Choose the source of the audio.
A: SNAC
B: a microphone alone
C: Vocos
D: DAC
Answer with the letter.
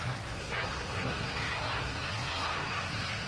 A